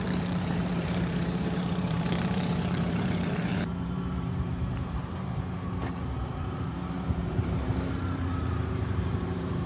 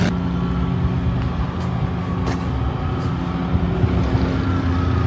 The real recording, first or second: second